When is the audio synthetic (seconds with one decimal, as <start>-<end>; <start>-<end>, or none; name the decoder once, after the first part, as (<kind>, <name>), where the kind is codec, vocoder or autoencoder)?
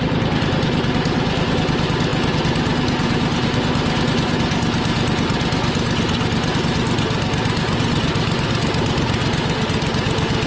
none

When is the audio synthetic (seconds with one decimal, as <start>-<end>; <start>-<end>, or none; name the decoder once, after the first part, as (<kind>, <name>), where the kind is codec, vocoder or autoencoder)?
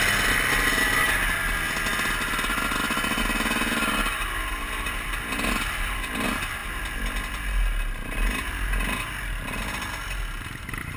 none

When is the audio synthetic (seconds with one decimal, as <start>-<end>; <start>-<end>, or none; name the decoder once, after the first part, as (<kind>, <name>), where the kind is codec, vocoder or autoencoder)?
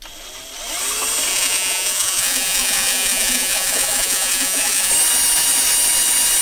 1.3-4.9 (vocoder, Vocos)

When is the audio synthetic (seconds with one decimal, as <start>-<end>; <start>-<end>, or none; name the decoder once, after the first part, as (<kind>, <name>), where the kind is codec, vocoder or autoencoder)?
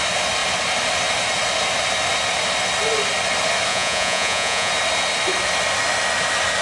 3.7-4.7 (vocoder, Vocos)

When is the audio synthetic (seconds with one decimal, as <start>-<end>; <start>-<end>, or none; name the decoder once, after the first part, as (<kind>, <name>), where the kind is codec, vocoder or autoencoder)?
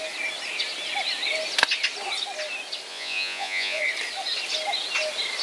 2.9-3.8 (vocoder, Vocos)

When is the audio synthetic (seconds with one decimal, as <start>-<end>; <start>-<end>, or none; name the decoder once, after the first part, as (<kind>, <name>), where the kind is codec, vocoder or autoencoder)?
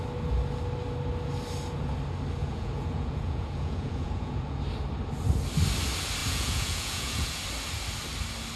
2.4-4.6 (vocoder, Vocos); 6.2-7.4